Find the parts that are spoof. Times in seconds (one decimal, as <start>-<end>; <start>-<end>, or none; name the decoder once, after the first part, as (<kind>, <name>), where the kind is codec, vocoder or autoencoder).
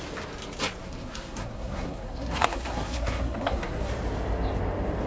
0.8-3.9 (codec, SNAC)